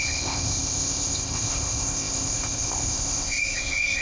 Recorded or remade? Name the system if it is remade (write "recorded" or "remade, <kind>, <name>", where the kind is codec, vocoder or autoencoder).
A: remade, codec, ZipCodec